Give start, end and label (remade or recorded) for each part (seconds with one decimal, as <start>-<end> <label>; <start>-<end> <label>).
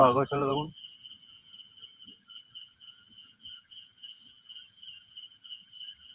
0.0-6.1 remade